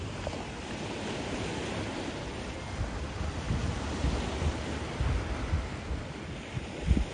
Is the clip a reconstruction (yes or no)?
no